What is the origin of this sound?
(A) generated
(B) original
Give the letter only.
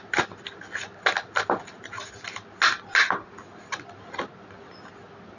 B